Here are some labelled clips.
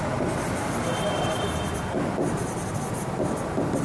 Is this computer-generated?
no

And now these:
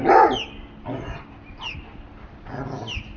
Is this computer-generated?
no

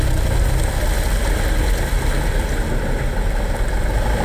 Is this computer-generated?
no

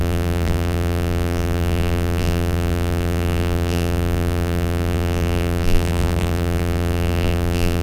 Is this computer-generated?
yes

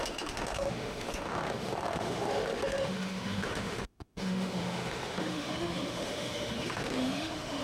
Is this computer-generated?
yes